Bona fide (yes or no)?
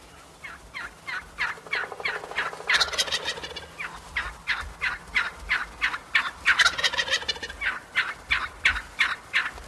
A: yes